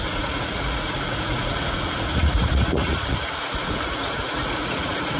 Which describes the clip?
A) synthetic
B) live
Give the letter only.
A